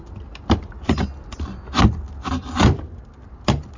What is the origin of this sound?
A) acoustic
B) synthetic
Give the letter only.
A